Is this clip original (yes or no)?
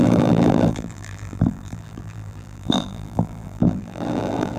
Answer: no